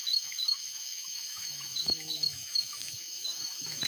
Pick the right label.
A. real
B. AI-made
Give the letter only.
B